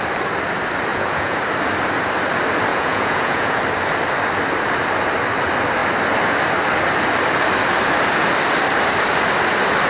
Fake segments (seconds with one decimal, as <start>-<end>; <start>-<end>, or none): 0.9-1.4; 2.7-3.6